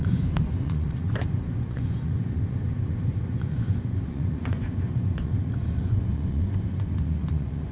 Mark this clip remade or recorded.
remade